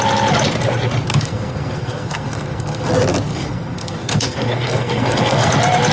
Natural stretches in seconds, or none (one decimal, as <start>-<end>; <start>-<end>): 0.0-1.1; 2.9-3.3; 5.5-5.9